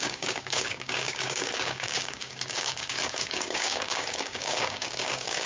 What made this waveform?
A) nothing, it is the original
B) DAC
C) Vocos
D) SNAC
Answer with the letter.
B